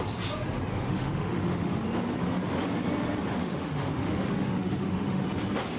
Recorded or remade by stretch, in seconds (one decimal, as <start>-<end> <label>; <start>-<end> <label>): 0.0-0.7 recorded; 0.7-1.8 remade; 1.8-3.4 recorded; 3.4-5.2 remade; 5.2-5.8 recorded